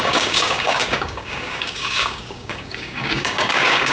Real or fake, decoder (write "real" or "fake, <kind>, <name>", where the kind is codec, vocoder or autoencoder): fake, codec, DAC